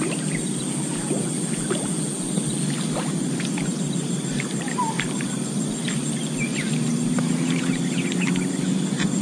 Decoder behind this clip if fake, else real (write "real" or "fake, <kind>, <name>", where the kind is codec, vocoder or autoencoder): real